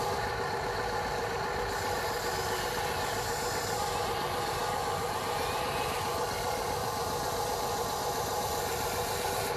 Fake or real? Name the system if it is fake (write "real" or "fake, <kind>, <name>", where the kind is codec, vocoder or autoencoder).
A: real